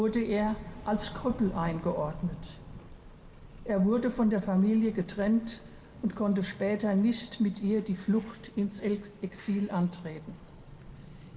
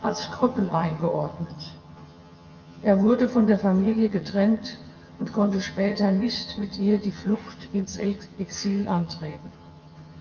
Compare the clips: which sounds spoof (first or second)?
second